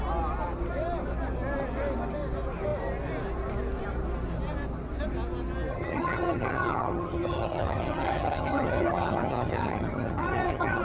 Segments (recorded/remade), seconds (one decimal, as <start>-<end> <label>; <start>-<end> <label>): 0.0-5.7 recorded; 5.7-10.8 remade